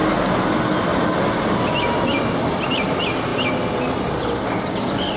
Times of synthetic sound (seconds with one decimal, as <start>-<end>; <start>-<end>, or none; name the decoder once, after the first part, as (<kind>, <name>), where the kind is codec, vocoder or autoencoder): none